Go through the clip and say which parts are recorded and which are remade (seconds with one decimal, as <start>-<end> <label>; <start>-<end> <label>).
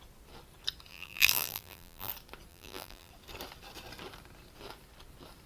0.0-0.9 recorded; 0.9-2.1 remade; 2.1-2.5 recorded; 2.5-3.1 remade; 3.1-5.5 recorded